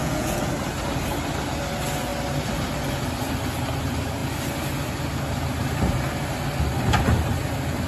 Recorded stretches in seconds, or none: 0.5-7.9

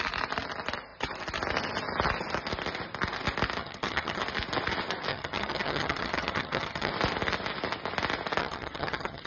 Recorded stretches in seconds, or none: 0.0-3.6; 4.2-5.1; 6.9-8.4

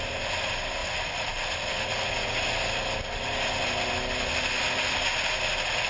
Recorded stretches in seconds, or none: 0.0-5.9

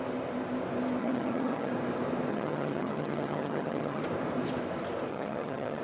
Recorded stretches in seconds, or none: 0.0-1.0; 1.7-2.3; 4.0-5.1